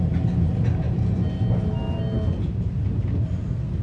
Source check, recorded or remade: recorded